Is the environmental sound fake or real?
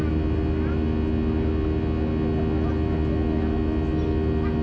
real